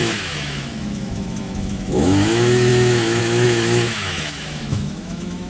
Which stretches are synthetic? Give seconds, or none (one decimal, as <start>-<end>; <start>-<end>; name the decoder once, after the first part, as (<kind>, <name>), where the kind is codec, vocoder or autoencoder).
0.0-5.5 (autoencoder, DAC-VAE)